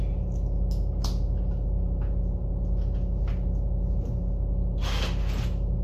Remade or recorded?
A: recorded